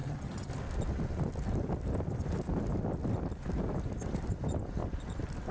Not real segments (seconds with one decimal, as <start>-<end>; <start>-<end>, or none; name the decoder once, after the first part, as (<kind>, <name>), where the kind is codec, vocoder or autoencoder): 0.0-0.5 (vocoder, HiFi-GAN)